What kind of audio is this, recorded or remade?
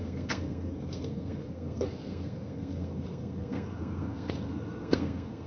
remade